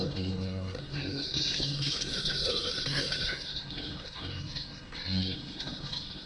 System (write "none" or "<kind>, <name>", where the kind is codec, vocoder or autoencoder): codec, SNAC